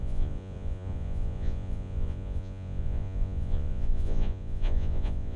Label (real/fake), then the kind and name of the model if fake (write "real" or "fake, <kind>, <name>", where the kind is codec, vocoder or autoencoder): fake, vocoder, Vocos